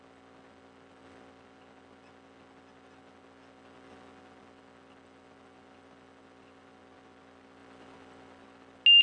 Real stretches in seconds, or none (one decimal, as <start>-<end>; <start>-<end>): 0.0-9.0